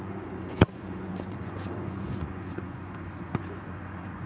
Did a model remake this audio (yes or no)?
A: yes